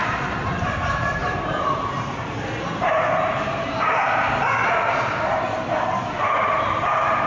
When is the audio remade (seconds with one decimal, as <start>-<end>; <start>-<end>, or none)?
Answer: 0.0-7.3